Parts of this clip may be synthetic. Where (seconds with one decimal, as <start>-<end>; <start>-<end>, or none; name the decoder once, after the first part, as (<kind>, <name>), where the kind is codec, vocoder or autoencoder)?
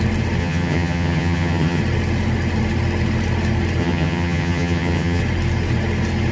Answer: 0.4-1.8 (vocoder, HiFi-GAN); 3.8-5.2